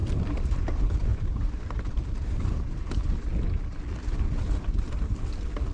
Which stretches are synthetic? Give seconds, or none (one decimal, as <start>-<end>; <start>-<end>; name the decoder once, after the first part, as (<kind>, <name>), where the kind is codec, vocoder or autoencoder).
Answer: 0.0-0.6 (vocoder, BigVGAN v2); 1.1-2.8